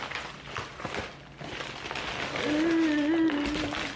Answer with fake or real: real